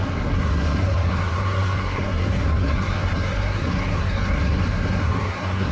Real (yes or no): no